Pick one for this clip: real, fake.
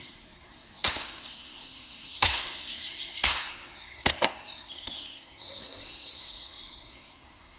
fake